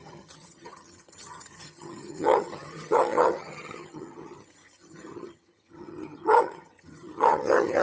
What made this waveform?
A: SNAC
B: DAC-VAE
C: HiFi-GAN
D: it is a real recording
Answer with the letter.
C